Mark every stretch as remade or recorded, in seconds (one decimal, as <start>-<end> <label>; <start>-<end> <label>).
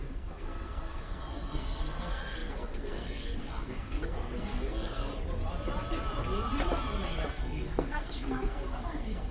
0.0-5.1 remade; 5.1-7.3 recorded; 7.3-9.3 remade